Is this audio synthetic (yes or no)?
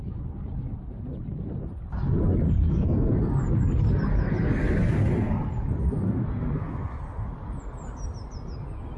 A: no